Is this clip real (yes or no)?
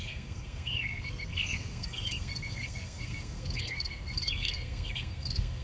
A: no